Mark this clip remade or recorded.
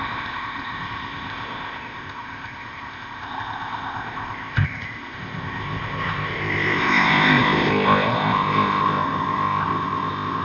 remade